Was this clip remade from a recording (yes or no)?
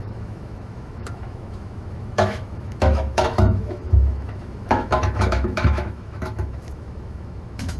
yes